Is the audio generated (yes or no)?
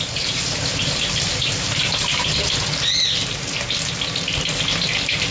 no